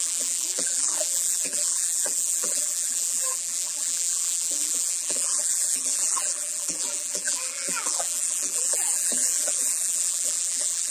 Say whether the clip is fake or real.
fake